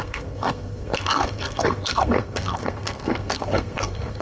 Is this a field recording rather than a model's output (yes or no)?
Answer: no